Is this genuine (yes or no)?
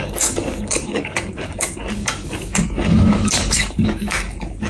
no